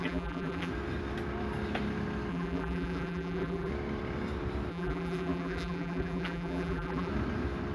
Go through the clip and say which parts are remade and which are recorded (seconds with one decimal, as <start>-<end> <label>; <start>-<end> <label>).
0.0-0.7 remade; 0.7-2.3 recorded; 2.3-3.7 remade; 3.7-4.7 recorded; 4.7-7.1 remade; 7.1-7.7 recorded